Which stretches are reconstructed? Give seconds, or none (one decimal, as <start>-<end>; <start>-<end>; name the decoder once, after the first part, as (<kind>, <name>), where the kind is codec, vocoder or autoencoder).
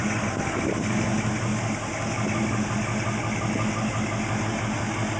none